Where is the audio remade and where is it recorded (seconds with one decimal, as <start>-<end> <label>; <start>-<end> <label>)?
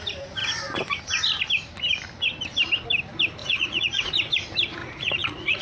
0.0-3.4 recorded; 3.4-4.1 remade; 4.1-4.8 recorded; 4.8-5.6 remade